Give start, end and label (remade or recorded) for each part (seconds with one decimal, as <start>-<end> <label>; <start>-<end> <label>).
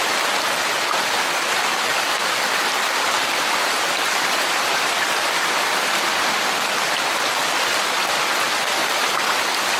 0.0-1.9 recorded; 1.9-6.3 remade; 6.3-8.8 recorded; 8.8-9.8 remade